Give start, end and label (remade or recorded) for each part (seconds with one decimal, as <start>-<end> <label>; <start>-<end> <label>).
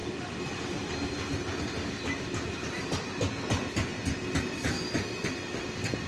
0.0-6.1 recorded